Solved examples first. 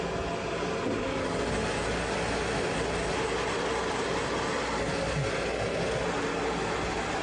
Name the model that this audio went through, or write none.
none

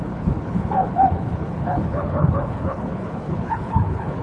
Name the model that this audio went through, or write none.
codec, HILCodec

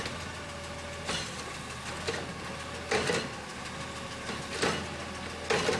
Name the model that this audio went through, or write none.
none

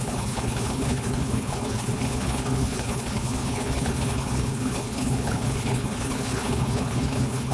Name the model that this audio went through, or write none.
codec, HILCodec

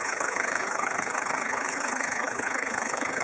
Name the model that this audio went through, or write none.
codec, HILCodec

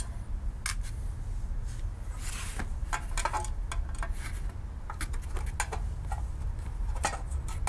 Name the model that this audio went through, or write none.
none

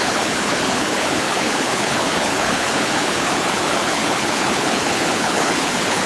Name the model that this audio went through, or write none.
codec, HILCodec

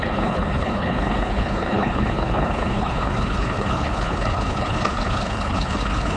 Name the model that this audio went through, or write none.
codec, HILCodec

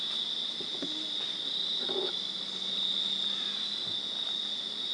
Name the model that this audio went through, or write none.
none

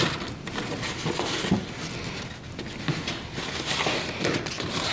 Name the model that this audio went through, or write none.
none